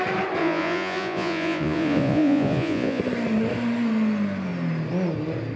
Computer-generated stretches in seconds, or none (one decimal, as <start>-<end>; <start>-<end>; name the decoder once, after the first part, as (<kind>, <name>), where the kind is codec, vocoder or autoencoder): 0.4-3.0 (vocoder, Vocos)